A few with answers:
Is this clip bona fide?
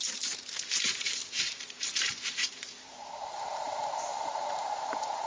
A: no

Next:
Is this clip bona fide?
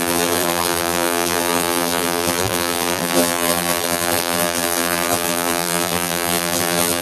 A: no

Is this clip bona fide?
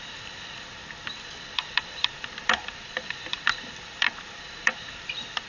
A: no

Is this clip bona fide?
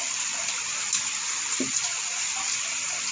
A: no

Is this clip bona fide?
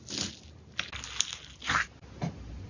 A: yes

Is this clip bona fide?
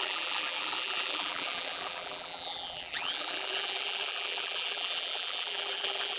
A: no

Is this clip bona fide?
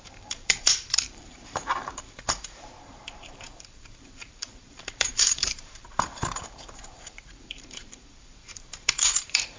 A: no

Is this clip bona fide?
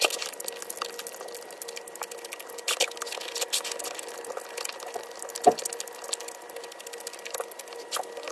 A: yes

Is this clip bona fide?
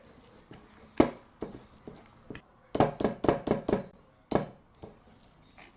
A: yes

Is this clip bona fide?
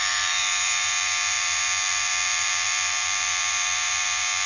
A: no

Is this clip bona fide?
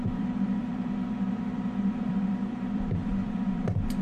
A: no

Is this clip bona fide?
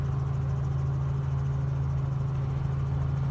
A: yes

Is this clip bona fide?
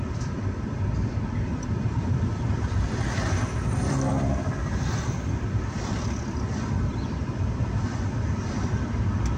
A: no